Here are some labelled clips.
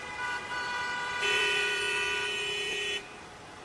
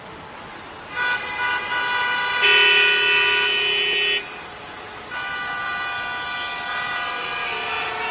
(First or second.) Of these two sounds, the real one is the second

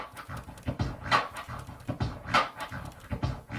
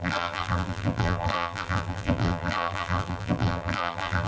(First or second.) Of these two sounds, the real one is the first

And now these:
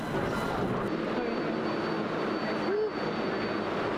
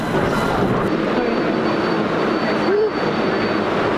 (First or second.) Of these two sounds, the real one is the first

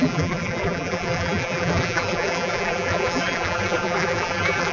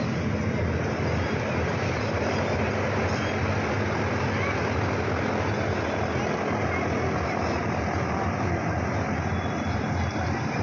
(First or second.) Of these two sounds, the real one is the second